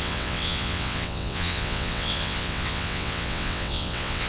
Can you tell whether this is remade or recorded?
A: remade